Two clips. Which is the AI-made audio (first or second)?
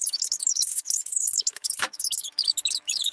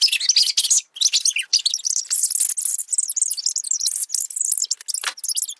first